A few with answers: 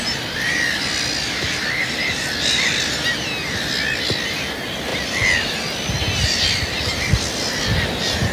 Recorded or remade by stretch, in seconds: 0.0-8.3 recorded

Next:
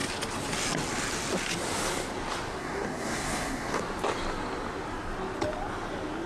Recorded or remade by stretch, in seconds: 0.0-2.6 recorded; 2.6-3.8 remade; 3.8-6.3 recorded

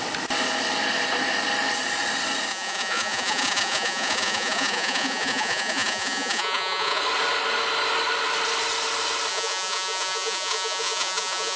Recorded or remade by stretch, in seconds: 0.0-2.5 recorded; 2.5-7.0 remade; 7.0-9.3 recorded; 9.3-11.6 remade

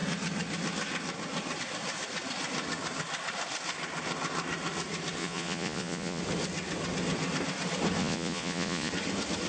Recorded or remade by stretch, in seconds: 0.0-5.2 recorded; 5.2-6.2 remade; 6.2-8.0 recorded; 8.0-8.9 remade; 8.9-9.5 recorded

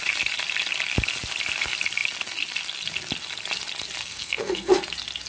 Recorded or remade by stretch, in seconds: 0.0-4.0 recorded; 4.0-4.8 remade; 4.8-5.3 recorded

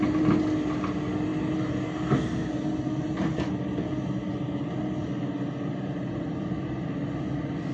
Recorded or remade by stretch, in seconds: 0.0-7.7 recorded

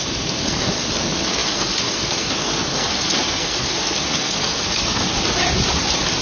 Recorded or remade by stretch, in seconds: 0.0-5.1 remade; 5.1-6.2 recorded

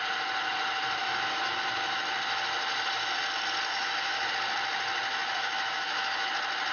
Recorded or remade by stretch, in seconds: 0.0-1.0 recorded; 1.0-2.0 remade; 2.0-3.7 recorded; 3.7-4.3 remade; 4.3-5.1 recorded; 5.1-6.3 remade; 6.3-6.7 recorded